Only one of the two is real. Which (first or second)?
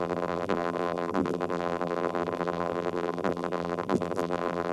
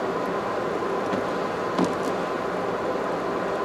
second